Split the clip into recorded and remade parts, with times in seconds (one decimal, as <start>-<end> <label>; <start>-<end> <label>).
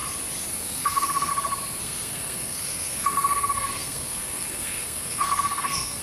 0.0-0.5 recorded; 0.5-1.3 remade; 1.3-1.8 recorded; 1.8-6.0 remade